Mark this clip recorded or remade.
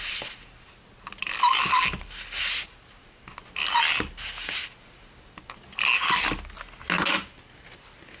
recorded